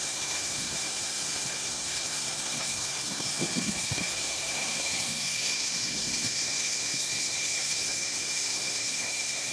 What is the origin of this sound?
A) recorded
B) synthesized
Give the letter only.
B